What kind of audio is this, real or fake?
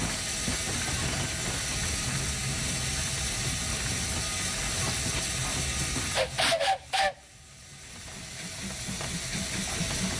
real